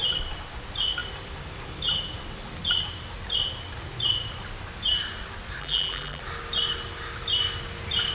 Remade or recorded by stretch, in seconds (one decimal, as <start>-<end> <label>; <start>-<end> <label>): 0.0-5.6 recorded; 5.6-6.2 remade; 6.2-8.1 recorded